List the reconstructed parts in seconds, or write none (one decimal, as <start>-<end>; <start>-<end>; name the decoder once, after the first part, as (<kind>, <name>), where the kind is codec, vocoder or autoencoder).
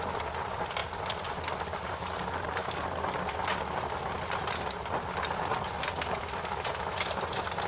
0.8-1.3 (vocoder, BigVGAN v2)